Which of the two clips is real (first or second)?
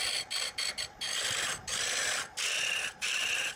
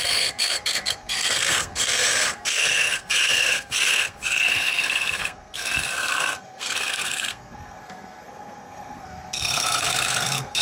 first